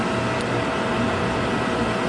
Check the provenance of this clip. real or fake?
real